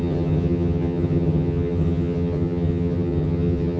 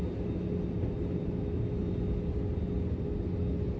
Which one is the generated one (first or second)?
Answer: first